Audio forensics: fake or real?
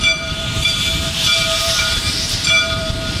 fake